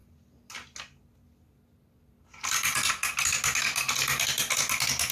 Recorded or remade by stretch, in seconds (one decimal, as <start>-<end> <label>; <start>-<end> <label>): 0.0-5.1 recorded